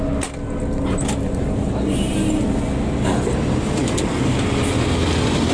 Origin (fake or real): real